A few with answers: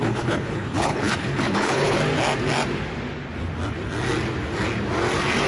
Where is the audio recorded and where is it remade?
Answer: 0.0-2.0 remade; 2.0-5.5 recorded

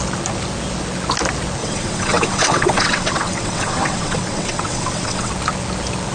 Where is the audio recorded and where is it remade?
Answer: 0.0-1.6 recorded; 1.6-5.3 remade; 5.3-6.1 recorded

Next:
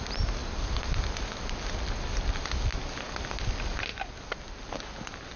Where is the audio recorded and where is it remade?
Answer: 0.0-5.4 recorded

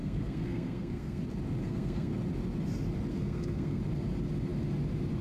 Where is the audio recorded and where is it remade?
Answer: 0.0-1.2 remade; 1.2-1.6 recorded; 1.6-2.1 remade; 2.1-3.1 recorded; 3.1-3.8 remade; 3.8-5.2 recorded

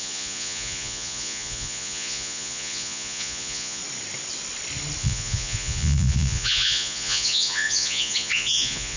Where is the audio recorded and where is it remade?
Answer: 0.0-3.8 remade; 3.8-5.0 recorded; 5.0-9.0 remade

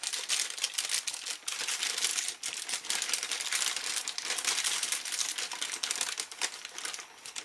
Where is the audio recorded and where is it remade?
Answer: 0.0-7.4 recorded

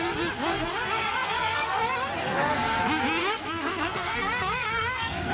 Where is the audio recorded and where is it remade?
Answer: 0.0-0.5 recorded; 0.5-1.8 remade; 1.8-2.2 recorded; 2.2-2.8 remade; 2.8-3.2 recorded; 3.2-5.3 remade